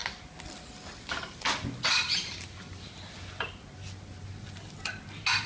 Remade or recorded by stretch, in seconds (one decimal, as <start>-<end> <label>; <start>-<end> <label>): 0.0-5.5 recorded